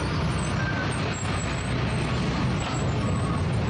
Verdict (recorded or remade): recorded